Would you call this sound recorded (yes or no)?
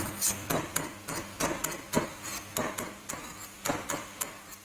yes